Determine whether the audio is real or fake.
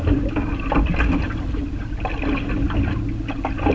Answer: real